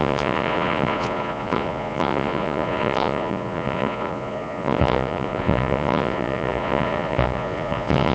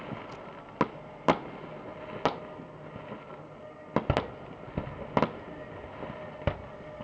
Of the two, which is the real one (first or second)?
second